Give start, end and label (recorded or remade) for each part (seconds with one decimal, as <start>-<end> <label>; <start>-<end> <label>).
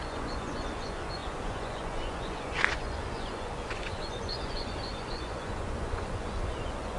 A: 0.0-7.0 remade